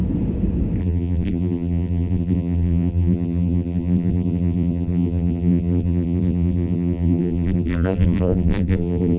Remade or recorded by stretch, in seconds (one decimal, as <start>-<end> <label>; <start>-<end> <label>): 0.0-0.8 recorded; 0.8-9.2 remade